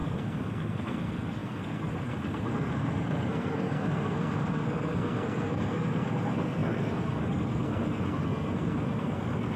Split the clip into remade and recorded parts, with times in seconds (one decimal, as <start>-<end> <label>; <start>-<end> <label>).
0.0-9.6 remade